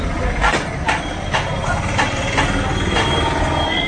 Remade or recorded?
recorded